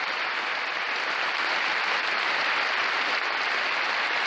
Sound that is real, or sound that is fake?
real